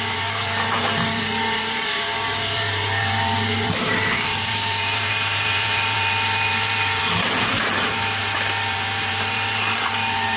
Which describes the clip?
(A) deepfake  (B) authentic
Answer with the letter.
A